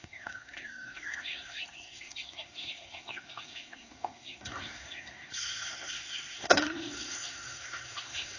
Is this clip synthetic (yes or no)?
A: yes